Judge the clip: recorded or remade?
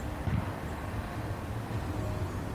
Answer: recorded